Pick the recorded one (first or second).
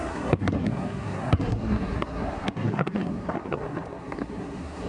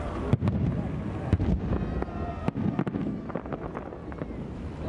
second